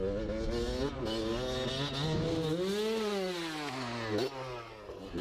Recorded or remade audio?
recorded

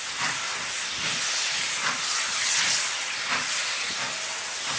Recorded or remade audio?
recorded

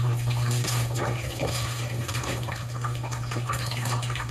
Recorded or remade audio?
remade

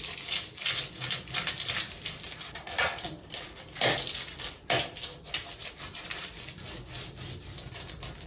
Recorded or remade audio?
recorded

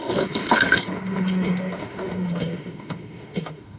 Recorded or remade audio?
remade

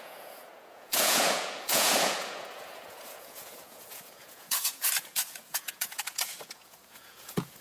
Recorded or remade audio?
remade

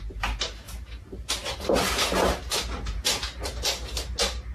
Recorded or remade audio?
recorded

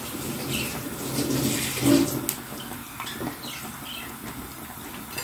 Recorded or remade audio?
recorded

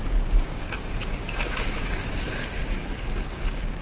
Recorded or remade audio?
remade